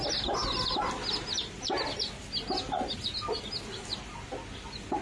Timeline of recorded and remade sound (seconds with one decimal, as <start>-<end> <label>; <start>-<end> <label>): 0.0-5.0 recorded